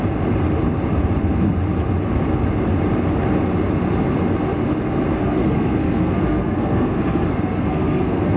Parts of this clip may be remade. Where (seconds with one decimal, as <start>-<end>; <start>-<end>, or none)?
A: 5.2-8.4